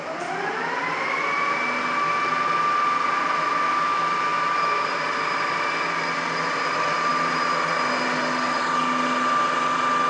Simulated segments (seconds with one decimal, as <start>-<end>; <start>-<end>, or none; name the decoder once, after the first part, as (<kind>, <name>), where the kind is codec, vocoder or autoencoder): none